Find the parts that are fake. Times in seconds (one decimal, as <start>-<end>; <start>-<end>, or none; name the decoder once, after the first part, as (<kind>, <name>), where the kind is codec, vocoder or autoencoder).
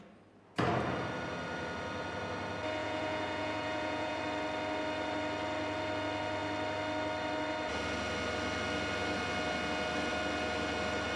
2.8-4.2 (vocoder, Vocos)